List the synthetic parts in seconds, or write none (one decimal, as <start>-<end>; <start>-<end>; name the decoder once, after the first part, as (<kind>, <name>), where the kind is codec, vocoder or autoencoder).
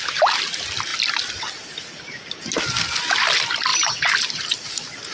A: none